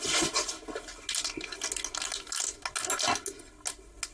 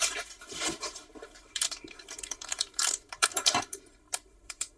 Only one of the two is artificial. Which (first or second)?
second